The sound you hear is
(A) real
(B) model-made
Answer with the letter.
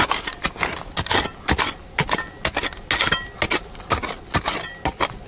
A